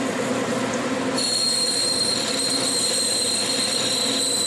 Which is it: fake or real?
real